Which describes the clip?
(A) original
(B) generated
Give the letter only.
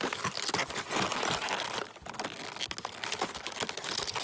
A